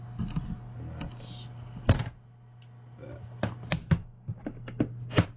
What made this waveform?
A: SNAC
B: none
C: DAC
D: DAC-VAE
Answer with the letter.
B